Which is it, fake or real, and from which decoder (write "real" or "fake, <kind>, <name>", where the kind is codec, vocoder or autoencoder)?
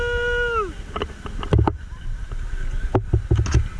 real